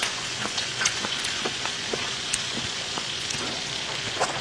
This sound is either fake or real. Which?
fake